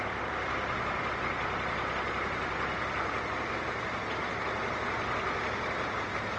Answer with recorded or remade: recorded